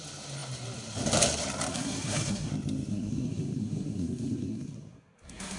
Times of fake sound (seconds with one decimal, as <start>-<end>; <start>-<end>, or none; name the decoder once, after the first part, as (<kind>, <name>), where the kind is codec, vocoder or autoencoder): 1.7-2.5 (codec, SNAC); 2.9-5.6